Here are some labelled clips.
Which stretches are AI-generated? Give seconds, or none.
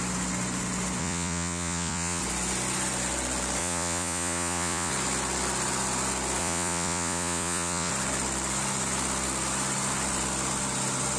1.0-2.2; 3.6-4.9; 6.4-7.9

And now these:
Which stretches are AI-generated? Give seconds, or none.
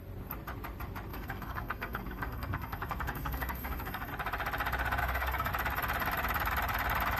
1.1-4.1; 5.0-5.5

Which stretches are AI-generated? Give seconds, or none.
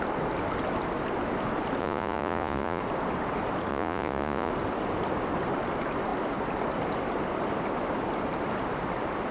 1.8-2.8; 3.7-4.5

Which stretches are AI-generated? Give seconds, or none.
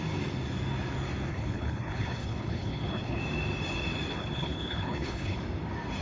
1.3-3.2; 4.1-5.4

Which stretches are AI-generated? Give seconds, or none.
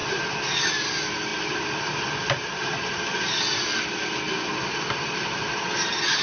none